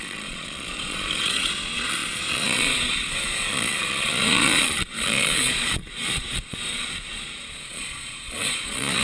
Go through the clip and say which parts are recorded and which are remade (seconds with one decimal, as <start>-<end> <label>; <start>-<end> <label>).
0.0-9.0 remade

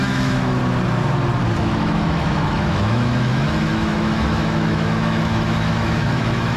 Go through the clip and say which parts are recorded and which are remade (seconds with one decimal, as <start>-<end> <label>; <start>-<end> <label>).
0.0-0.6 remade; 0.6-1.6 recorded; 1.6-6.6 remade

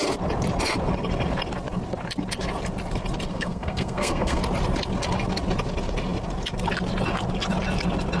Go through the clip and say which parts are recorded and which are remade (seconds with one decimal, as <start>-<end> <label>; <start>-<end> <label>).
0.0-3.3 recorded; 3.3-4.4 remade; 4.4-8.2 recorded

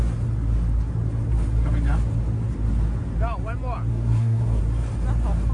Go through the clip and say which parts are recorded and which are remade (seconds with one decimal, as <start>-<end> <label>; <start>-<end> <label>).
0.0-3.9 recorded; 3.9-4.6 remade; 4.6-5.5 recorded